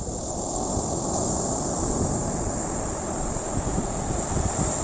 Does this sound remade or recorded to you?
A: recorded